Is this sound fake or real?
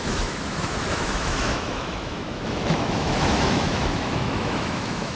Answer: fake